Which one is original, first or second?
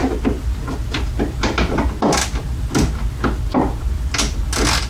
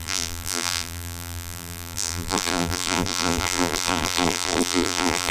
first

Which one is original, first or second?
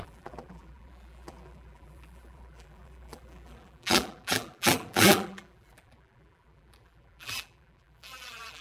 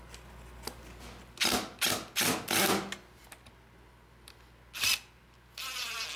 second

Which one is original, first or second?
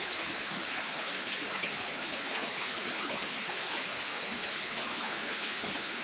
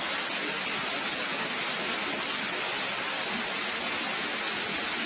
second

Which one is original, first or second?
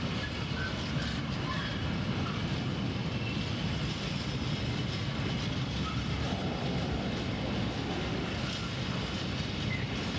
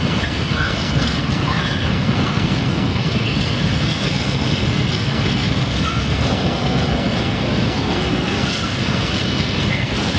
first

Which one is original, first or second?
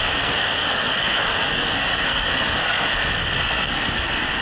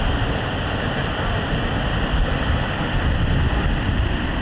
second